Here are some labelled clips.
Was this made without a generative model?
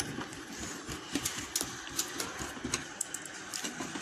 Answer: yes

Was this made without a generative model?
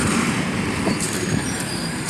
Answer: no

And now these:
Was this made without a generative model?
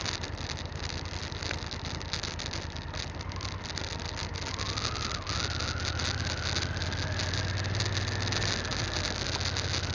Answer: yes